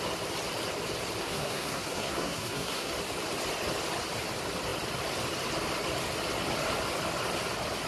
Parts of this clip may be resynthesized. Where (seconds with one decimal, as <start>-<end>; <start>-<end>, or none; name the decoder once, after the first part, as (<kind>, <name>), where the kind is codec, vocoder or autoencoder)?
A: 1.2-2.9 (codec, SNAC)